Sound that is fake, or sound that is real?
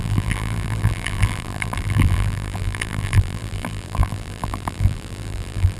fake